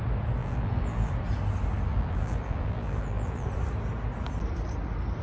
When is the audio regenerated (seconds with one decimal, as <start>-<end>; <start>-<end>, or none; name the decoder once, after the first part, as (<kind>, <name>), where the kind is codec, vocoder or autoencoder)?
0.4-1.1 (vocoder, BigVGAN v2); 1.9-3.5